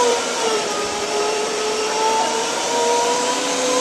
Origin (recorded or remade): remade